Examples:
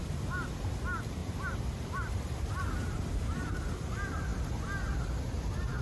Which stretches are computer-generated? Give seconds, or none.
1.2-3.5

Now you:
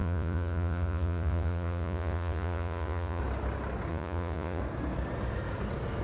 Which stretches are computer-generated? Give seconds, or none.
0.0-3.2; 3.9-4.6

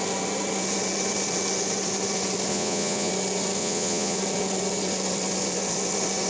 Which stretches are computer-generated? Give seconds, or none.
2.5-3.1; 3.6-4.2